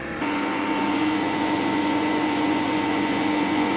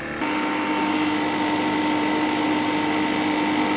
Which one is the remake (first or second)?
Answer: first